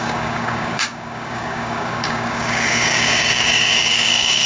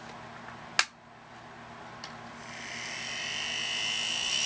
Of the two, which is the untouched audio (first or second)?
second